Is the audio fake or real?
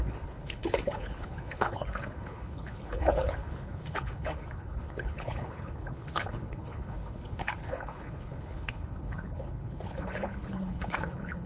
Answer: fake